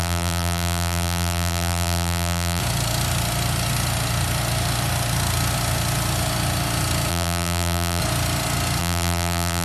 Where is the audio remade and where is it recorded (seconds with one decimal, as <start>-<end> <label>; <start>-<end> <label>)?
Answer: 0.0-2.6 remade; 2.6-7.1 recorded; 7.1-8.0 remade; 8.0-8.8 recorded; 8.8-9.6 remade